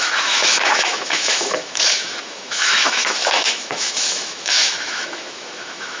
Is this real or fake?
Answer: fake